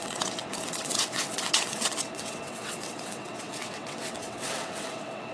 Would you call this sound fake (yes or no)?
yes